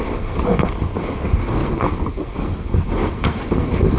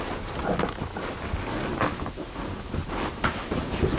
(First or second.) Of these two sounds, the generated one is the first